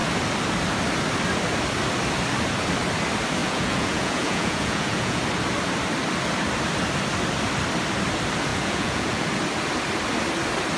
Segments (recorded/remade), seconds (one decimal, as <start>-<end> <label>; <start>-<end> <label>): 0.0-3.4 recorded; 3.4-5.2 remade; 5.2-8.5 recorded; 8.5-9.2 remade; 9.2-10.8 recorded